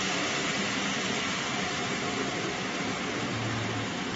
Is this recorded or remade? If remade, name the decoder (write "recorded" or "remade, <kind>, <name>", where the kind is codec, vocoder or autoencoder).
recorded